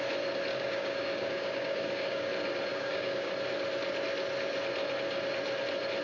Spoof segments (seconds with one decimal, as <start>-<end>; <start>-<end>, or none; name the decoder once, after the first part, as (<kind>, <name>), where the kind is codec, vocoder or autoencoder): 0.5-2.3 (codec, DAC); 2.7-3.3